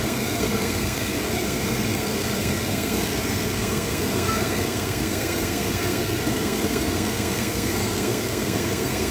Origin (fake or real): fake